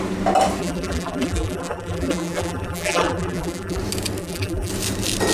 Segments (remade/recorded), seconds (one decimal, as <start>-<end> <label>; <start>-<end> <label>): 0.0-0.6 recorded; 0.6-3.8 remade; 3.8-4.2 recorded; 4.2-4.7 remade; 4.7-5.3 recorded